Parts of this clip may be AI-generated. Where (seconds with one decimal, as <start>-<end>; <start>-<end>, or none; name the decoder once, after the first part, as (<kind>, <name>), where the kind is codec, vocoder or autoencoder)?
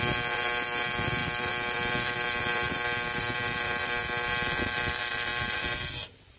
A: none